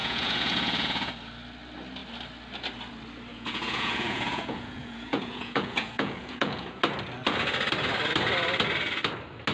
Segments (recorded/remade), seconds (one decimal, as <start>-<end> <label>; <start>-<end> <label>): 0.0-1.1 remade; 1.1-3.3 recorded; 3.3-6.8 remade; 6.8-9.5 recorded